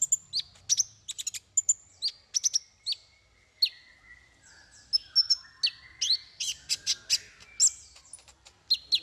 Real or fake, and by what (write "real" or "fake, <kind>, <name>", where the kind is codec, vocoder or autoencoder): real